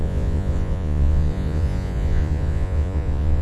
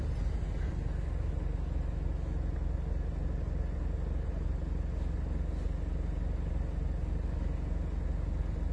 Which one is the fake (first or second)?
first